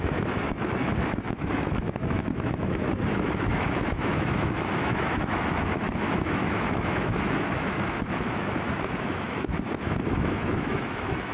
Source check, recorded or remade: remade